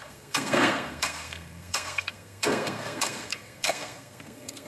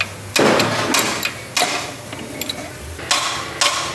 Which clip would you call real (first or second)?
second